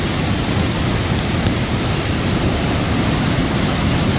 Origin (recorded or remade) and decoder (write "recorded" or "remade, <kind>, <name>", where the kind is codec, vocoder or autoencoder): recorded